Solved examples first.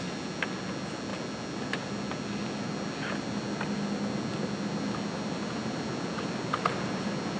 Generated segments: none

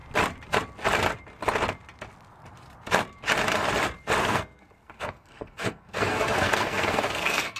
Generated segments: 4.2-7.6 (codec, SNAC)

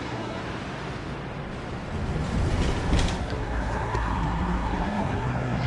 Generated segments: 0.0-0.4 (codec, SNAC); 3.2-5.7

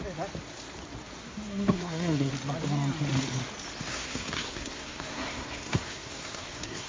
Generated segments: 1.2-2.3 (codec, SNAC); 3.9-6.9

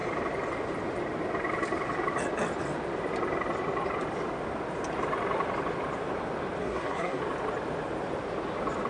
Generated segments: 6.6-7.2 (codec, SNAC)

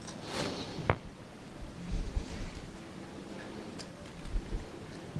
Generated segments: none